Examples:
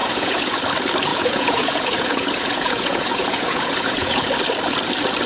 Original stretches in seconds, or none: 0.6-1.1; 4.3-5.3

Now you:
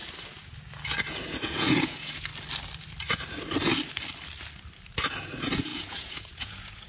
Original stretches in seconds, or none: 0.0-1.1; 2.3-5.1

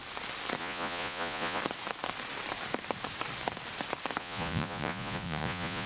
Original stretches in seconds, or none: 0.0-0.6; 1.6-4.2

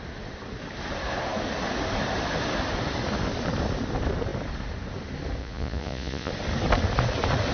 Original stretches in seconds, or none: 0.0-5.4; 6.3-7.5

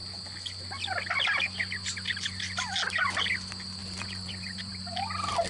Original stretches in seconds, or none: 0.0-3.8; 4.7-5.5

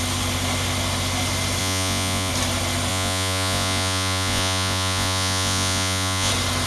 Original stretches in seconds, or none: 0.0-1.6; 2.3-2.9; 6.3-6.7

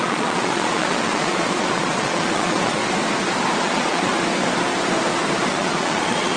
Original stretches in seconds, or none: 2.8-3.6; 4.1-5.5

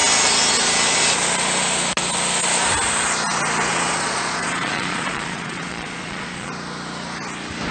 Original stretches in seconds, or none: 0.0-3.7; 6.5-7.7